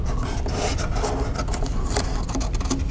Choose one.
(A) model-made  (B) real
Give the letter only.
B